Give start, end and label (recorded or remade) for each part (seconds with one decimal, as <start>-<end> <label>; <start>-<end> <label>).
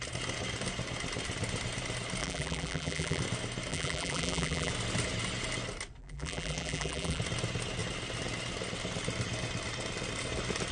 0.0-2.2 recorded; 2.2-3.2 remade; 3.2-3.7 recorded; 3.7-4.7 remade; 4.7-6.0 recorded; 6.0-7.2 remade; 7.2-10.7 recorded